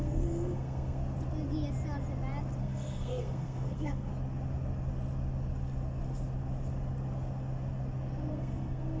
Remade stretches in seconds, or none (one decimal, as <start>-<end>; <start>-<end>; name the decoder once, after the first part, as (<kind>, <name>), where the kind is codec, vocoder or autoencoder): 0.0-1.0 (codec, SNAC); 2.6-4.1; 8.3-9.0